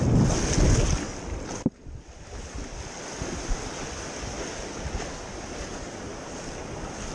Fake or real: real